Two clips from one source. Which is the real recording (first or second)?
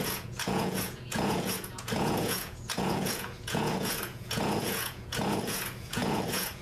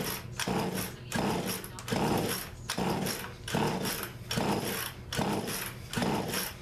second